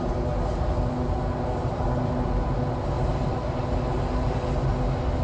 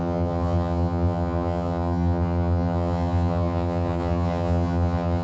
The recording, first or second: first